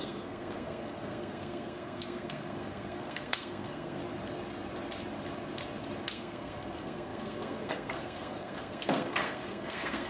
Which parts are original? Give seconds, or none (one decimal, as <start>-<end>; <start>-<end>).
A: 4.0-6.1